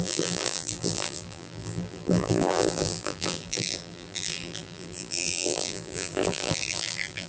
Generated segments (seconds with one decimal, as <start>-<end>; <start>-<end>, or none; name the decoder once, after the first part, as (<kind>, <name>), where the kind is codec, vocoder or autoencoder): 0.0-7.3 (vocoder, BigVGAN v2)